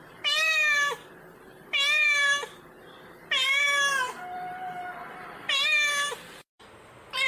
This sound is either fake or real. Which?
fake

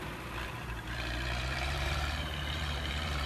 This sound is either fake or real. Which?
fake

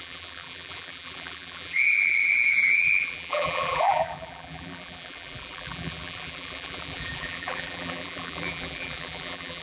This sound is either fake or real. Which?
fake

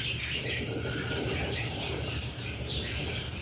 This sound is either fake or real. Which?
fake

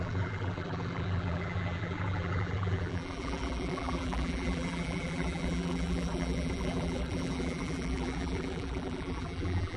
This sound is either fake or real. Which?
fake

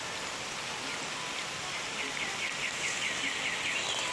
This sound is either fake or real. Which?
real